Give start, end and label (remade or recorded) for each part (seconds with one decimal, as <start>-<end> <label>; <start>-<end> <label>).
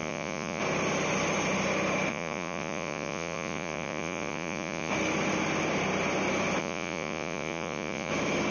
0.0-0.6 remade; 0.6-2.1 recorded; 2.1-4.9 remade; 4.9-6.6 recorded; 6.6-8.1 remade; 8.1-8.5 recorded